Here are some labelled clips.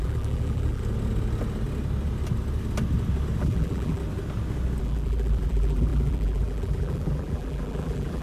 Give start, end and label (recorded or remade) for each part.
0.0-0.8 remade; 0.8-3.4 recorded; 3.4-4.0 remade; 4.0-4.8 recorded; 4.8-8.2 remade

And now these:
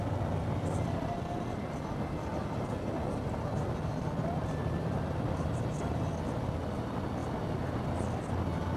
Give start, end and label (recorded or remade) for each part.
0.0-8.8 recorded

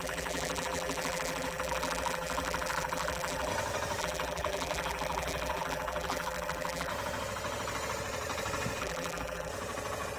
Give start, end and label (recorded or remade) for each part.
0.0-3.5 remade; 3.5-4.0 recorded; 4.0-6.9 remade; 6.9-8.8 recorded; 8.8-9.5 remade; 9.5-10.2 recorded

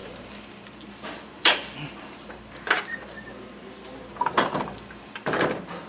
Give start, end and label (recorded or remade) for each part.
0.0-3.3 remade; 3.3-4.0 recorded; 4.0-5.9 remade

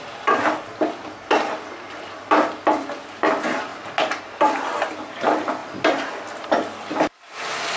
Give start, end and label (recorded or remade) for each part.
0.0-7.8 recorded